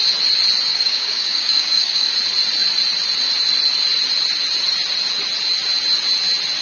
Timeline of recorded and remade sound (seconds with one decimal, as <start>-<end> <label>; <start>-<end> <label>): 0.0-0.7 recorded; 0.7-2.1 remade; 2.1-6.6 recorded